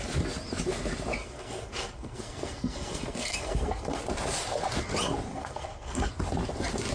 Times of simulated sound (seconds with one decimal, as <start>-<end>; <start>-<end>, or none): 1.2-4.0; 5.3-6.1